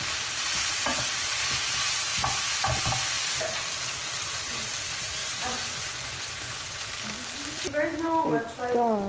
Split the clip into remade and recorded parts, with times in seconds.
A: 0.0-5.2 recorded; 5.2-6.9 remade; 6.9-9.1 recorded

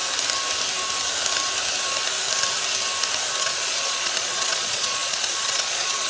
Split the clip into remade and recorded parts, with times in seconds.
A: 0.0-3.4 recorded; 3.4-6.1 remade

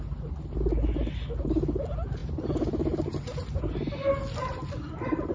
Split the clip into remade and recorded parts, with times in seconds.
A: 0.0-5.3 recorded

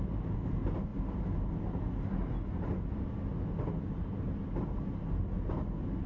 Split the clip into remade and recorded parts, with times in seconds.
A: 0.0-6.1 recorded

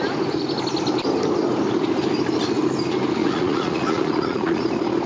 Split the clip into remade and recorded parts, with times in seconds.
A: 0.0-3.2 recorded; 3.2-4.6 remade; 4.6-5.1 recorded

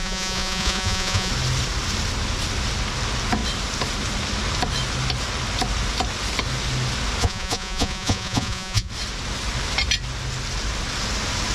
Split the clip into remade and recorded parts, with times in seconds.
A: 0.0-1.3 remade; 1.3-7.2 recorded; 7.2-8.9 remade; 8.9-11.5 recorded